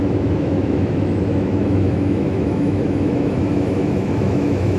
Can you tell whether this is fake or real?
fake